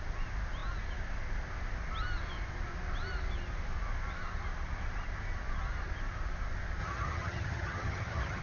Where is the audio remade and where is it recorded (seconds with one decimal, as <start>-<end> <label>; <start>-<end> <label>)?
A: 0.0-6.8 recorded; 6.8-8.4 remade